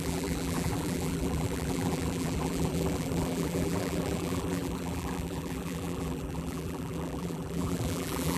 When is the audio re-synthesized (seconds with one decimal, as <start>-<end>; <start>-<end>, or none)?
0.0-8.4